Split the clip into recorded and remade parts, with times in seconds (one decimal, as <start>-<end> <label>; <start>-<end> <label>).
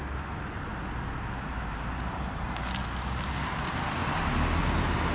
0.0-5.1 recorded